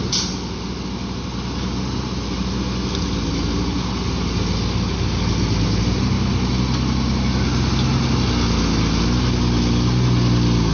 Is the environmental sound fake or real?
real